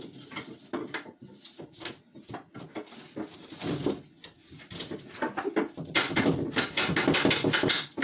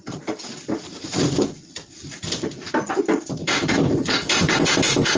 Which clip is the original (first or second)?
first